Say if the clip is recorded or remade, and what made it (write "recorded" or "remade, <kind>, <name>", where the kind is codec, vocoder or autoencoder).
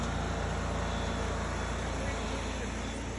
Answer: recorded